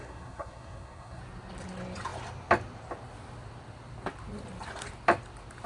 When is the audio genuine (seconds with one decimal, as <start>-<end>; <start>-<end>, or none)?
1.2-5.7